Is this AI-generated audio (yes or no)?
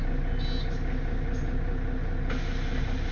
no